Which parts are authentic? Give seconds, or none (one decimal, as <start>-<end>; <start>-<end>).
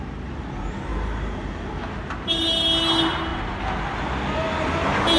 0.0-5.2